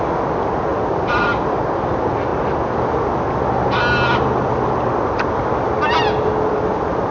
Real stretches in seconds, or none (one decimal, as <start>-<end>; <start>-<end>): 0.0-7.1